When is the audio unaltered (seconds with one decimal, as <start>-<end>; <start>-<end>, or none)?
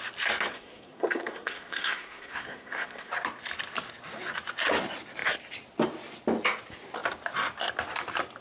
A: 0.0-0.5; 3.1-8.4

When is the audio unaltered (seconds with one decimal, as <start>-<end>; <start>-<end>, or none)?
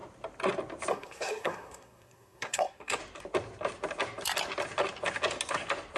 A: 0.0-0.9; 3.0-6.0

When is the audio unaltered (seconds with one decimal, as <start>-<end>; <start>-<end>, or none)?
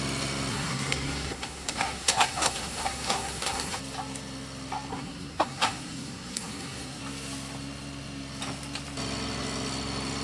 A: 0.0-0.5; 3.8-4.9; 7.0-10.2